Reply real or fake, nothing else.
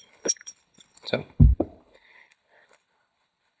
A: fake